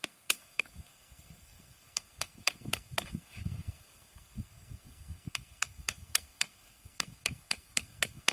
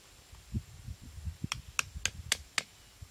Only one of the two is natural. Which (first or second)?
second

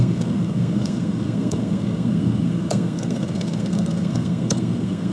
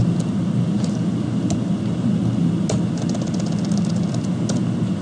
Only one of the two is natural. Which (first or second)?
second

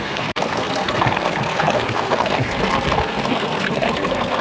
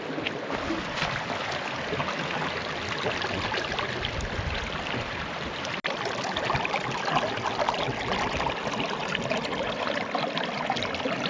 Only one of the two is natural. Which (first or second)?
second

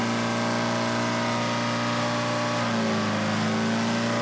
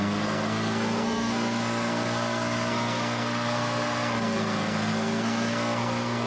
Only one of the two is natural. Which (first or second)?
first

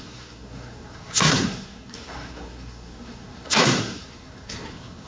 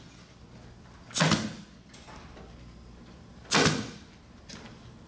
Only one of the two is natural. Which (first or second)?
second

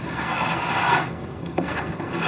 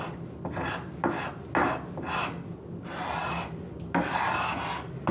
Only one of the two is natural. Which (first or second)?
second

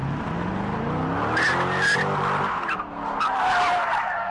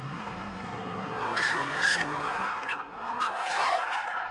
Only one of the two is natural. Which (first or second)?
first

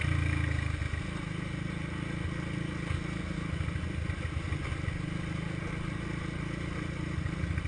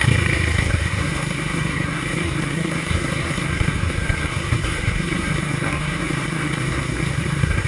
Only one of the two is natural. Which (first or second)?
first